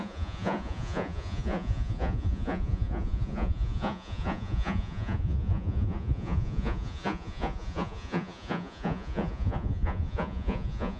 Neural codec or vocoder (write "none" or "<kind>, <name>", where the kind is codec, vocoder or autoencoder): vocoder, Vocos